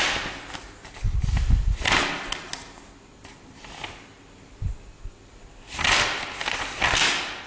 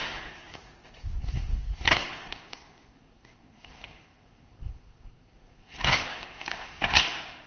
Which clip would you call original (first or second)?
first